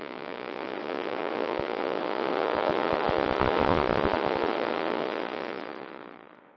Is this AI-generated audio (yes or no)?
yes